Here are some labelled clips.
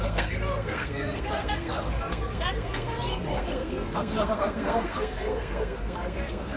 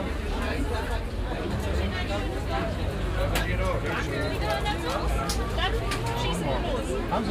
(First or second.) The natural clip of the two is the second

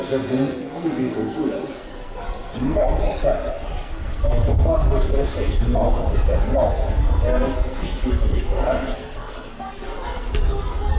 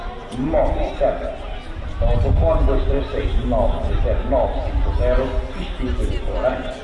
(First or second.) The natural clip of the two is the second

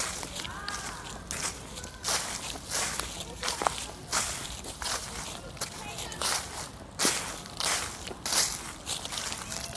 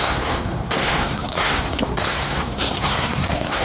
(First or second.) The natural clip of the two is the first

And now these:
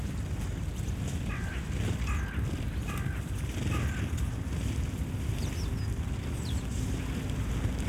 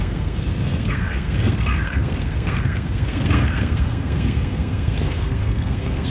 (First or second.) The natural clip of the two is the first